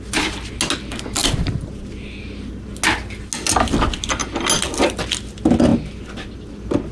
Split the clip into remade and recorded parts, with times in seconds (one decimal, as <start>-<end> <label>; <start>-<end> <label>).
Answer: 0.0-6.9 recorded